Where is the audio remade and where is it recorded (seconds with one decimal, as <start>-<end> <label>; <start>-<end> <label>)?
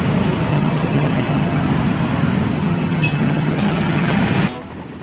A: 0.0-0.5 recorded; 0.5-1.6 remade; 1.6-2.6 recorded; 2.6-4.2 remade; 4.2-5.0 recorded